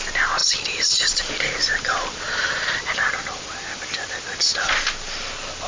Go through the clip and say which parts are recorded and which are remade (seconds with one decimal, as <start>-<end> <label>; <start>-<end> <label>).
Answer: 0.0-0.4 recorded; 0.4-3.4 remade; 3.4-5.7 recorded